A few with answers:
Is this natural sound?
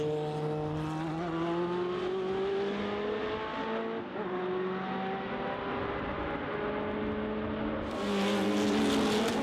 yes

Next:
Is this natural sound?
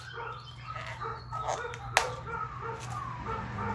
yes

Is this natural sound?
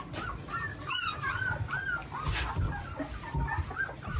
yes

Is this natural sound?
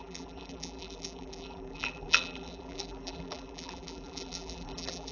no